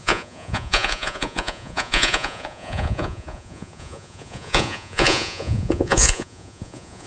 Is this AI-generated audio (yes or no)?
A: yes